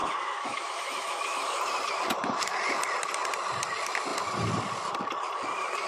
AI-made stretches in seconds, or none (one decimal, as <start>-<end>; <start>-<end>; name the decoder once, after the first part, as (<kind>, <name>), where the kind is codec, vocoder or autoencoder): 0.0-1.6 (autoencoder, DAC-VAE)